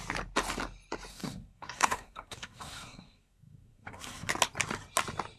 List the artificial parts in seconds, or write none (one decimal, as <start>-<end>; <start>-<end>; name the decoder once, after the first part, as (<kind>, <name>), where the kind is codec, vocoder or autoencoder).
1.1-4.3 (codec, SNAC)